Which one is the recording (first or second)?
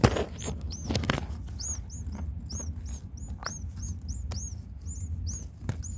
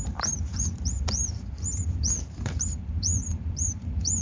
first